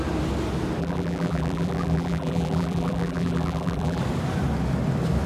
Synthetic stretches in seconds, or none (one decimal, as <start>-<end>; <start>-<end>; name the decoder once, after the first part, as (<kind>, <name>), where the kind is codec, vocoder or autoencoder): 0.8-4.0 (vocoder, BigVGAN v2)